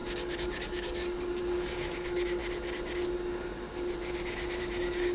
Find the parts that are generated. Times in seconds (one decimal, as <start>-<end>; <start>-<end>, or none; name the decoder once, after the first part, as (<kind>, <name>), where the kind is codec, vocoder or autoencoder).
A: 0.0-2.4 (codec, DAC); 4.6-5.1